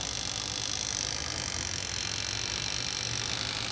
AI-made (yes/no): no